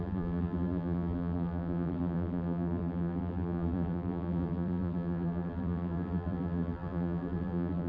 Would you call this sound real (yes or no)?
no